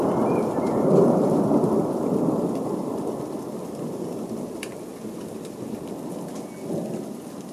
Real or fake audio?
real